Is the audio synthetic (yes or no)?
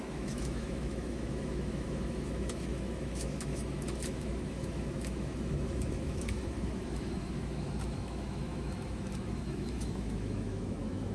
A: yes